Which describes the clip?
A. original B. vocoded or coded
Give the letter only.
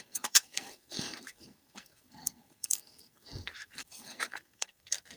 B